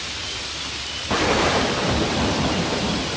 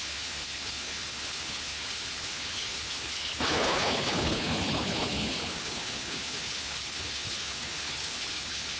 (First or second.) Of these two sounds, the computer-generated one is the second